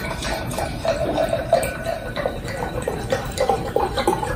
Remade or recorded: remade